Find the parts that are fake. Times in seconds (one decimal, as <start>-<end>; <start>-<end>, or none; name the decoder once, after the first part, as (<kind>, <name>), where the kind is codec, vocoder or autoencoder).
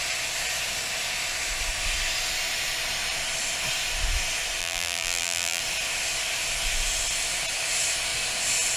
4.6-5.6 (vocoder, BigVGAN v2)